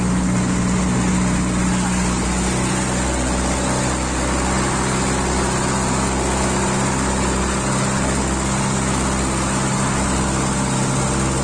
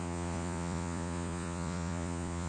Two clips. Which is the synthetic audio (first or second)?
second